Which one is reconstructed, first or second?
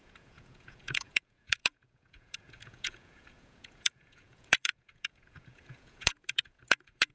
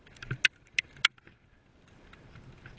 first